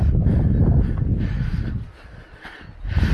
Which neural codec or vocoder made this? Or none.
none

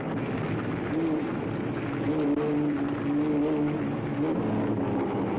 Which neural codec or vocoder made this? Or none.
none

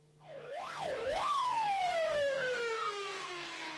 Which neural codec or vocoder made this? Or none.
codec, DAC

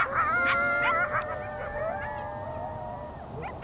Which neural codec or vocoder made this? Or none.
none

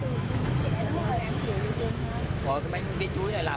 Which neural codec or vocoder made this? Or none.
autoencoder, DAC-VAE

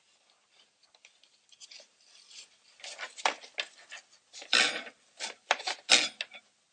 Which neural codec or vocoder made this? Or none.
none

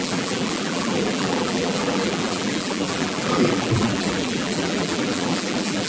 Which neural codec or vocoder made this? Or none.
vocoder, BigVGAN v2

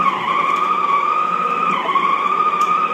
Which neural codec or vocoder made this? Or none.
vocoder, BigVGAN v2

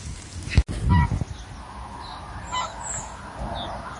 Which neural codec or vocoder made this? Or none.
none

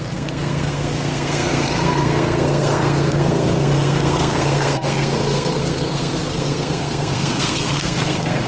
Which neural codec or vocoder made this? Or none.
codec, SNAC